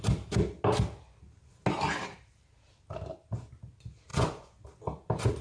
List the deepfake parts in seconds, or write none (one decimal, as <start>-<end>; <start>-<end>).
4.1-4.6